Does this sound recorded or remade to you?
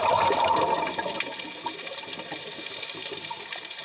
recorded